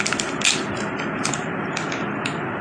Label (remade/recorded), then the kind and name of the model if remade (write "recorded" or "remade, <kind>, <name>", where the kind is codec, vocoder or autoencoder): recorded